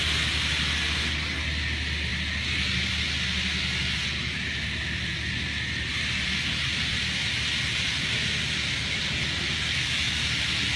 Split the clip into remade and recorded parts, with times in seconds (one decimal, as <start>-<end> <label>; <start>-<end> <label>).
0.0-10.8 recorded